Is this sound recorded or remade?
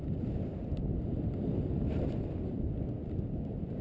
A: recorded